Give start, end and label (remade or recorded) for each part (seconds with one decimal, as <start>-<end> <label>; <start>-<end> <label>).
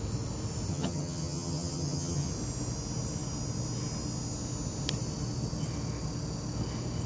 0.0-0.7 recorded; 0.7-2.3 remade; 2.3-7.1 recorded